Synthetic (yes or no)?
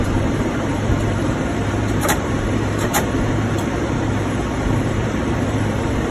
yes